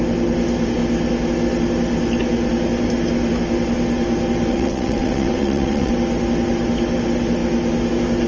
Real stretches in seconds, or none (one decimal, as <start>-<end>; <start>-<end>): 0.0-4.5; 5.9-8.3